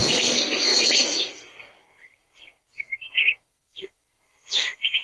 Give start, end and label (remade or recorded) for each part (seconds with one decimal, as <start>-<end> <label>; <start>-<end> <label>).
0.0-5.0 remade